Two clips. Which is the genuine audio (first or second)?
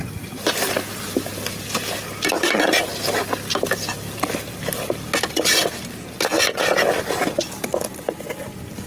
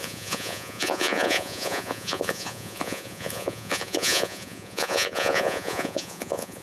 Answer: first